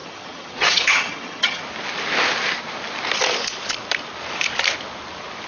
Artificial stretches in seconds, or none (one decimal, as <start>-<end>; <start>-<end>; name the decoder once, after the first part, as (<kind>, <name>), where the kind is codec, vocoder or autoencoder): 0.0-1.6 (vocoder, HiFi-GAN)